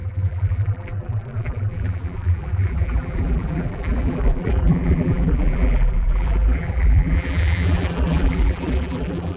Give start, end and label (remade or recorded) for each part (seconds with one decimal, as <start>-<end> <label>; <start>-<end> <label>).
0.0-9.4 remade